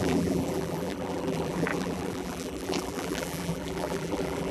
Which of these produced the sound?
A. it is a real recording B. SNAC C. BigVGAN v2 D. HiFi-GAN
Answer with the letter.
C